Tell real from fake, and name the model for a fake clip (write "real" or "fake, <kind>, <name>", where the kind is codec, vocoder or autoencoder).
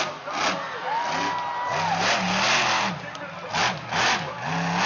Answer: real